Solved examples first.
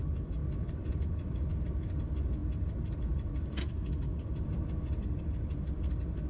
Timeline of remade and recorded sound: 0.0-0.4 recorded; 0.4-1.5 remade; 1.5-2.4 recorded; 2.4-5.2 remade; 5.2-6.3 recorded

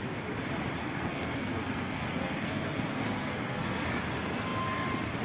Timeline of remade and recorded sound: 0.0-0.8 recorded; 0.8-3.9 remade; 3.9-5.2 recorded

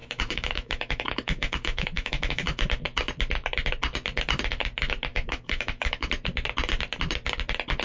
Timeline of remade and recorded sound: 0.0-2.7 remade; 2.7-5.1 recorded; 5.1-6.1 remade; 6.1-7.8 recorded

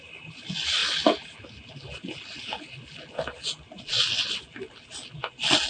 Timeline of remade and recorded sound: 0.0-5.7 recorded